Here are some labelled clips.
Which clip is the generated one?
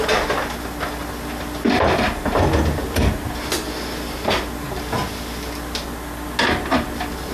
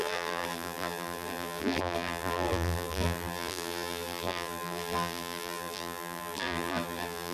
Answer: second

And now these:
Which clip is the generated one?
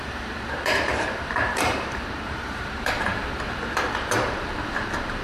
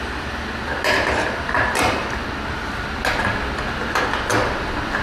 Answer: first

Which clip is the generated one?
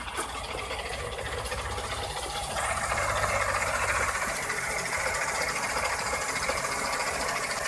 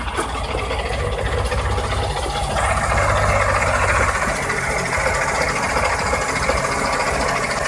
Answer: first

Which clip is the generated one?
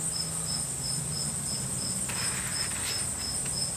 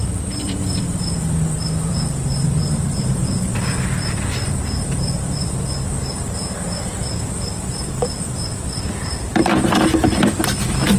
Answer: second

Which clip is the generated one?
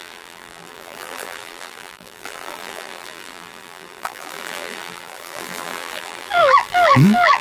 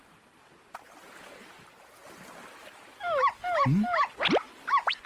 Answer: first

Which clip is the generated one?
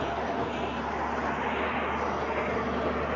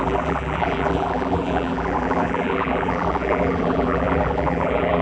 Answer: second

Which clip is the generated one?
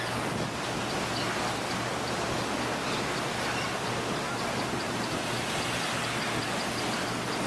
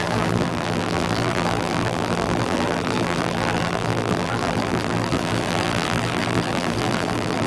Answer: second